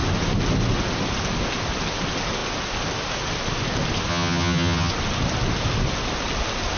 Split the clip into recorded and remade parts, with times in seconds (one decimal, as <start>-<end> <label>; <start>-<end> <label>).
0.0-4.1 recorded; 4.1-4.9 remade; 4.9-6.8 recorded